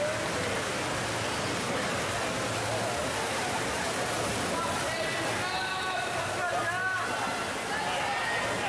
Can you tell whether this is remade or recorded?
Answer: recorded